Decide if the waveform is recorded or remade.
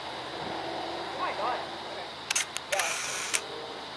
recorded